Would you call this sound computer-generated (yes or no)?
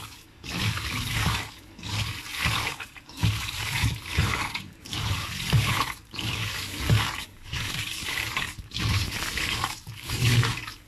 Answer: yes